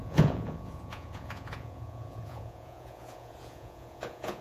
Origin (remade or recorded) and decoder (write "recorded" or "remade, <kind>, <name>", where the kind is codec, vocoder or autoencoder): remade, vocoder, Vocos